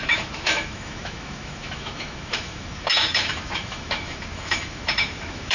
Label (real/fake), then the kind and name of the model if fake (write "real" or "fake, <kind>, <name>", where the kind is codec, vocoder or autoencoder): fake, autoencoder, DAC-VAE